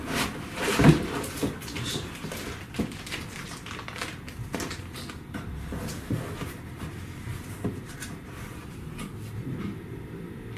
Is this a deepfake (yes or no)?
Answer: yes